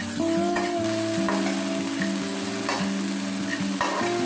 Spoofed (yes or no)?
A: no